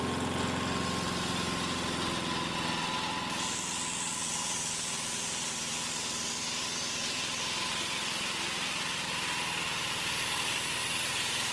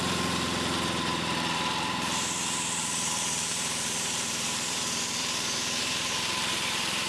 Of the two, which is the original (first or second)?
first